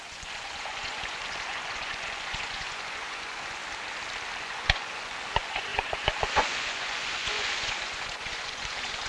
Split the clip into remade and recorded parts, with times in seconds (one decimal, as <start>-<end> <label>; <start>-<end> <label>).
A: 0.0-3.6 remade; 3.6-4.4 recorded; 4.4-9.1 remade